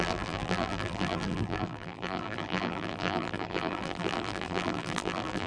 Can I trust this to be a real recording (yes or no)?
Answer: no